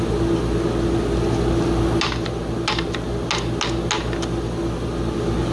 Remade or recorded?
recorded